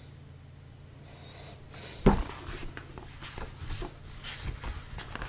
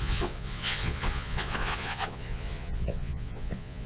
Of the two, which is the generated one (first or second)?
second